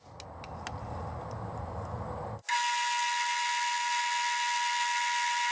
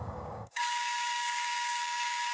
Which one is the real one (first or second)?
first